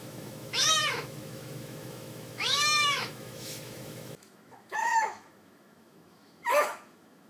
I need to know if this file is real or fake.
fake